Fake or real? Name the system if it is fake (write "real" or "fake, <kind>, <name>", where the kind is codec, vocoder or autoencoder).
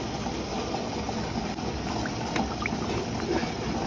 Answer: fake, vocoder, BigVGAN v2